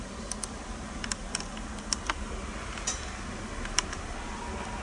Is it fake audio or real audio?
real